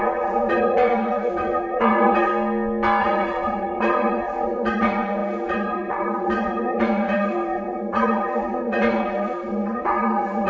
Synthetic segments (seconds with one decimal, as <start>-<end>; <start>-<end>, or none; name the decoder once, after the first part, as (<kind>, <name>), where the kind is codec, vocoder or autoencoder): 0.0-2.3 (vocoder, Vocos); 3.0-10.5